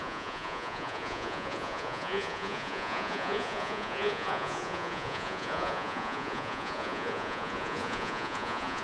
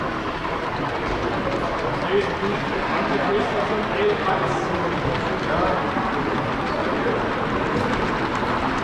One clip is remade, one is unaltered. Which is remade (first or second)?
first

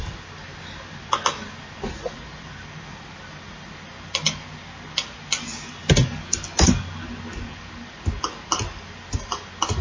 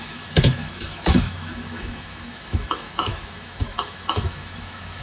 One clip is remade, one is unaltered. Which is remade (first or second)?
second